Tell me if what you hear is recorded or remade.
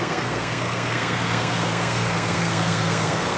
remade